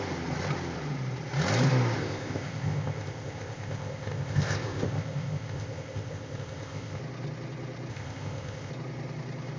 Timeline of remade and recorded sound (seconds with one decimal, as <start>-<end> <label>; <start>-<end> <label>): 0.0-2.0 recorded; 2.0-7.0 remade; 7.0-7.9 recorded; 7.9-8.7 remade; 8.7-9.6 recorded